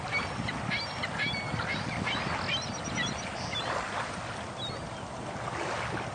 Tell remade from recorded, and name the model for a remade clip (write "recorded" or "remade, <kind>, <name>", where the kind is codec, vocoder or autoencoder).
recorded